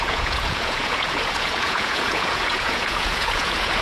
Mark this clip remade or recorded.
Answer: remade